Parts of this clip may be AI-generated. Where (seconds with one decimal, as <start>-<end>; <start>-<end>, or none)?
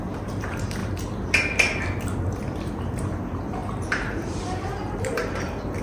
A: 0.0-0.8; 2.3-5.8